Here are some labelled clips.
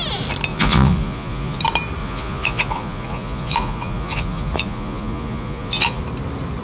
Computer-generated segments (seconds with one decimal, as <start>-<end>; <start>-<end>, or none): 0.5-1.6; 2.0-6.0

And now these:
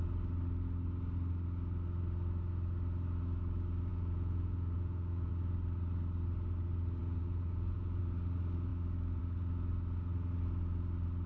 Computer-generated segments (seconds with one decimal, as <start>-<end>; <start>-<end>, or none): 3.9-5.3; 7.0-8.0

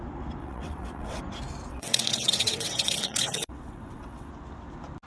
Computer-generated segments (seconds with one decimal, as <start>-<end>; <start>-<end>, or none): 0.4-1.2; 1.7-4.3

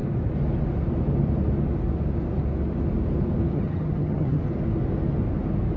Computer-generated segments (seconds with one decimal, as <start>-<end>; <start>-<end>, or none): 3.5-4.4